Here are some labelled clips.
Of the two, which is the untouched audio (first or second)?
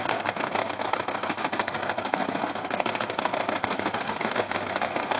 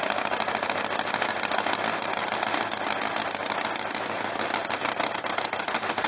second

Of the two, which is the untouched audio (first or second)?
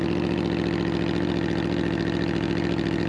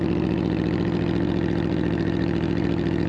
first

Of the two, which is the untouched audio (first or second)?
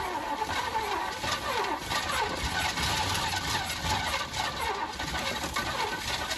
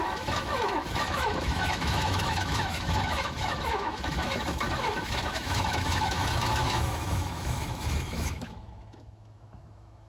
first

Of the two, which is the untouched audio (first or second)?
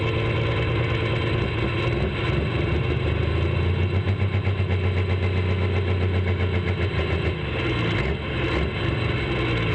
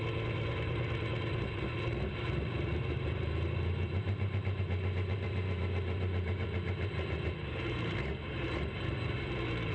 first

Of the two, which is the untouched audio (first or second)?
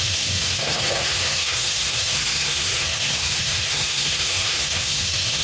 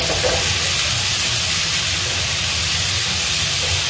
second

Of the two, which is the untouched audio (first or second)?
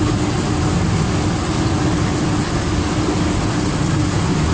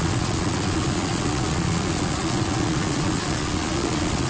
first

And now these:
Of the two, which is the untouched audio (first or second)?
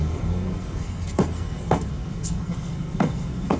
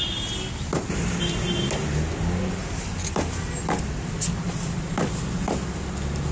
second